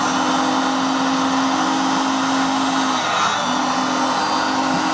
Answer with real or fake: real